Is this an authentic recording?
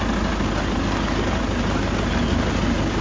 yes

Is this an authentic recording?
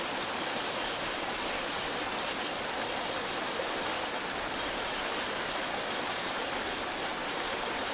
yes